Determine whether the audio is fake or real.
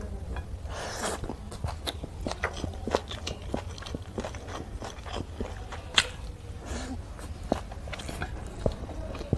real